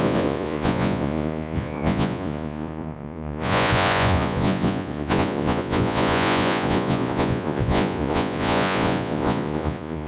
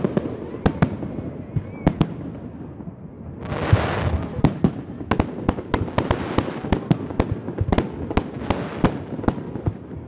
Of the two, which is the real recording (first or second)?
second